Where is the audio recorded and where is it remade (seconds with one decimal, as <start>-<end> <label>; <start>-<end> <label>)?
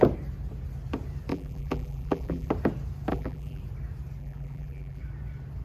0.0-1.3 recorded; 1.3-2.5 remade; 2.5-3.1 recorded; 3.1-3.6 remade; 3.6-4.2 recorded; 4.2-5.0 remade; 5.0-5.6 recorded